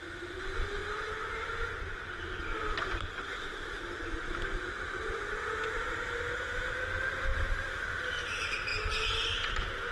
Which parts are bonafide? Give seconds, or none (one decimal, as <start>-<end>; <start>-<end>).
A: 0.0-7.3; 7.9-9.9

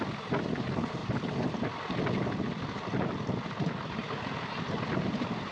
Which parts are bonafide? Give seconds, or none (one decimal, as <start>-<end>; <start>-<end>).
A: 0.0-1.0; 1.6-5.5

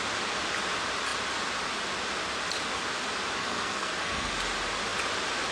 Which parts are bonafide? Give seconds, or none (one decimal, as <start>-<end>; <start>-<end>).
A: 0.0-3.4; 4.3-5.5

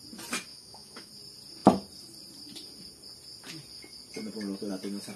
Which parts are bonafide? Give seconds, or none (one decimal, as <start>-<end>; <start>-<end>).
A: 0.0-0.5; 1.1-5.2

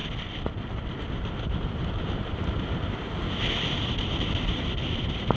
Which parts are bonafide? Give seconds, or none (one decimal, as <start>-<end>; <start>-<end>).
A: 0.0-5.4

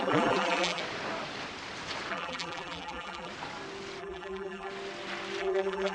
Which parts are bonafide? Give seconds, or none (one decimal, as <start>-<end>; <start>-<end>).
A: 0.8-2.1; 3.3-4.0; 4.7-5.4

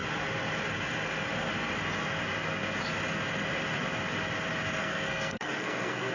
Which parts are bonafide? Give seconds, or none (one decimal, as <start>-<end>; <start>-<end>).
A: 0.0-4.8